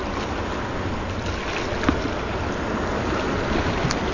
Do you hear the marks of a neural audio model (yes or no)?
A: no